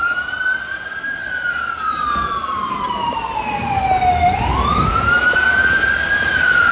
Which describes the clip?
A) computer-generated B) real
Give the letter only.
B